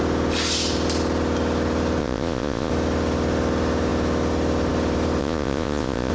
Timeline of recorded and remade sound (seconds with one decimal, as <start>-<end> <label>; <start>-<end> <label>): 0.0-2.0 recorded; 2.0-2.7 remade; 2.7-5.2 recorded; 5.2-6.1 remade